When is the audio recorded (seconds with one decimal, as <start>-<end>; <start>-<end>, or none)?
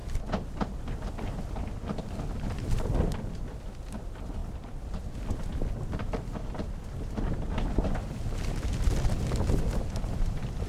0.0-10.7